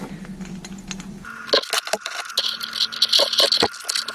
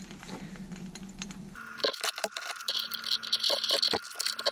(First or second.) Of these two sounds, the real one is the first